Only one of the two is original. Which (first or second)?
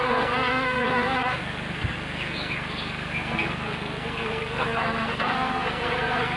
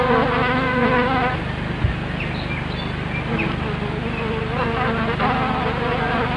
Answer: second